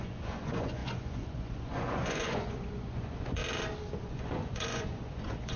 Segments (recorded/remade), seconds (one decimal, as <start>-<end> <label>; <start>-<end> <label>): 0.0-3.4 remade; 3.4-4.0 recorded; 4.0-5.6 remade